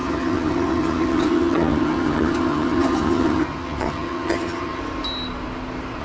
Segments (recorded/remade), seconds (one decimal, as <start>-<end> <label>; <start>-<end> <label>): 0.0-4.8 remade; 4.8-6.0 recorded